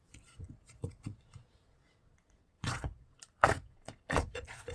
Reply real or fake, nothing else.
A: fake